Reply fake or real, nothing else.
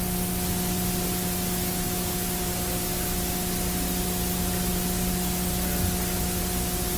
real